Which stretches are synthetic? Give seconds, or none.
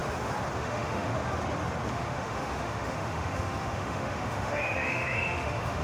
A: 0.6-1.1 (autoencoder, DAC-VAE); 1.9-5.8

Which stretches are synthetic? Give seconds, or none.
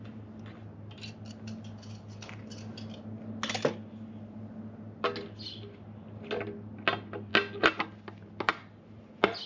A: none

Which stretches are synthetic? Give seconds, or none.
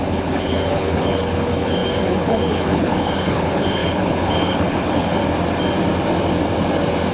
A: 0.0-5.2 (codec, HILCodec)